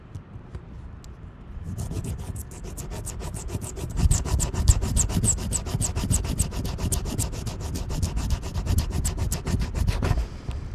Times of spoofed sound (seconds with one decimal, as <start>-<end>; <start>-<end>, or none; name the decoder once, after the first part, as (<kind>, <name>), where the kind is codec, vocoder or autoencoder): 3.2-5.0 (vocoder, BigVGAN v2)